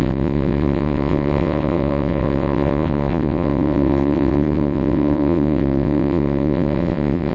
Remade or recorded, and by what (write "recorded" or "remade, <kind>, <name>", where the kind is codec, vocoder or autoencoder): remade, vocoder, WaveNeXt